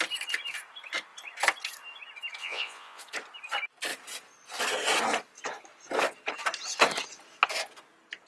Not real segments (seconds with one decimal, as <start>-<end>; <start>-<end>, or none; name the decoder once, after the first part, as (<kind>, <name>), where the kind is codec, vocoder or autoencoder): 2.4-3.0 (vocoder, Vocos)